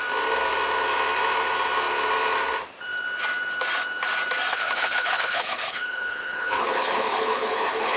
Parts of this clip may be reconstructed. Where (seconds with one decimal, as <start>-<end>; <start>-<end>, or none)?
4.5-8.0